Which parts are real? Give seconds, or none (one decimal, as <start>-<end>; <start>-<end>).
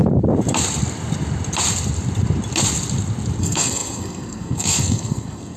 0.0-3.4